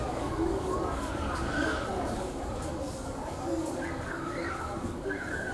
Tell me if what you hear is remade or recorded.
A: remade